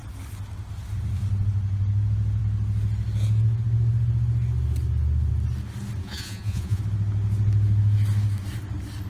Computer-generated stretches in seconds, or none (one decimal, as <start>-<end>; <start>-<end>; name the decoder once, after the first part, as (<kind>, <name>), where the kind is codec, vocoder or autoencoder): 6.0-6.8 (vocoder, Vocos)